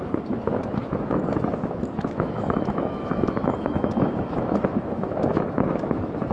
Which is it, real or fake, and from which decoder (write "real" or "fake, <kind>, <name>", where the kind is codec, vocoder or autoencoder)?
fake, autoencoder, DAC-VAE